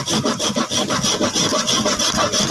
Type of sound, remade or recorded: recorded